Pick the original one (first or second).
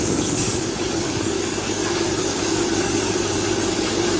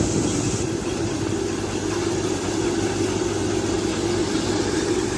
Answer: second